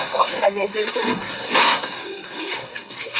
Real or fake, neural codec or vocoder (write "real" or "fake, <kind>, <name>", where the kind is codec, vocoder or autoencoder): fake, codec, SNAC